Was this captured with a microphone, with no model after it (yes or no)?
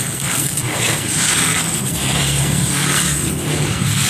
no